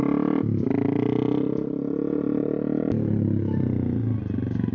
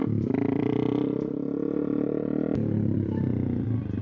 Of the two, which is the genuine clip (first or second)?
first